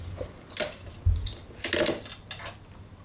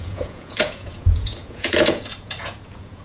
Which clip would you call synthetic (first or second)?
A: second